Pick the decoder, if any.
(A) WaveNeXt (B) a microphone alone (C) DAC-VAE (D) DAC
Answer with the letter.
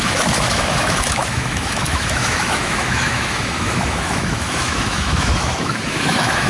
C